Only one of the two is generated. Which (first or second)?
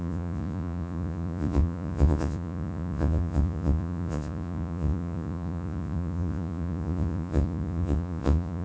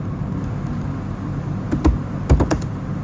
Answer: first